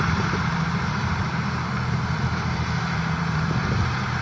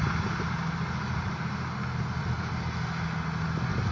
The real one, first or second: second